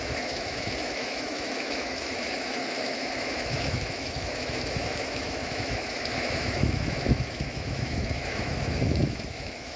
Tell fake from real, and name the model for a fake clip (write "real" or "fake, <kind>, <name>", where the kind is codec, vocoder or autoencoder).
fake, autoencoder, DAC-VAE